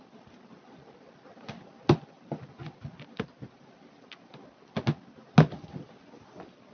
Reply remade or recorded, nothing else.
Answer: recorded